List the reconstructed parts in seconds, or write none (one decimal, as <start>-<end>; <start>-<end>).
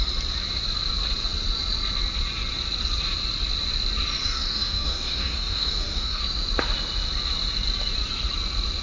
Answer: 4.2-6.2